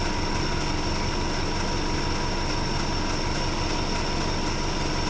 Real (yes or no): yes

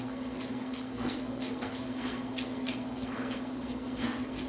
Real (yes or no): no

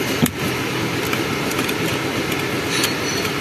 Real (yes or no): yes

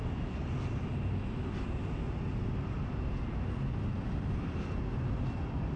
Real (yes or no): yes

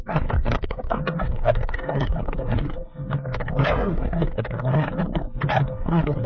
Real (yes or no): no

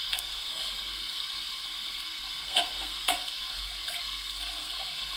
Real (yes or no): no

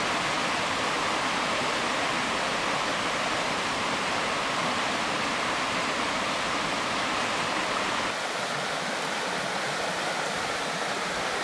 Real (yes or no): yes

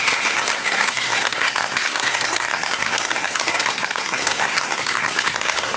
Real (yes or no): no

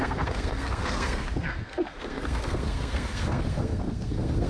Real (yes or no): no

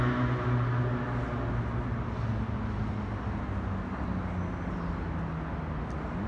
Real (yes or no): yes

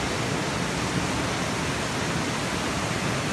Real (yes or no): yes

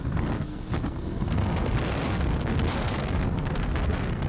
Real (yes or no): no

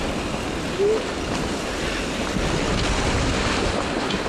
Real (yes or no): yes